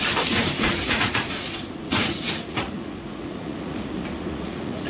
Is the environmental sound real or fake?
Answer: fake